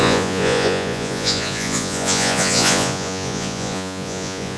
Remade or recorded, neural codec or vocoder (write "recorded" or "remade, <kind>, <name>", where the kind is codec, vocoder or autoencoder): remade, vocoder, Vocos